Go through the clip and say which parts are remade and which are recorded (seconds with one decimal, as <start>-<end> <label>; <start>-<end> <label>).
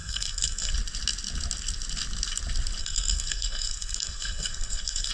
0.0-0.7 remade; 0.7-2.8 recorded; 2.8-5.1 remade